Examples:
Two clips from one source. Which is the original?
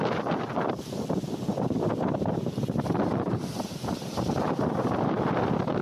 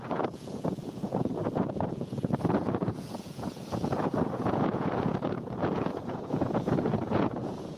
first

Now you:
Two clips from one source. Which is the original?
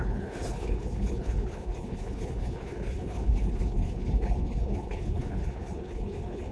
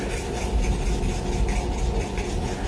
second